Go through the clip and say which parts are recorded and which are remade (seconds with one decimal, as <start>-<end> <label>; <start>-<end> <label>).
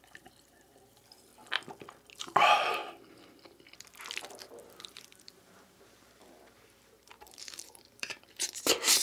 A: 0.0-1.3 remade; 1.3-2.2 recorded; 2.2-2.8 remade; 2.8-4.9 recorded; 4.9-9.0 remade